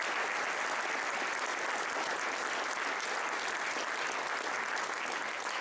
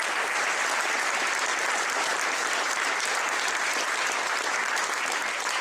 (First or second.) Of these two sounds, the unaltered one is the first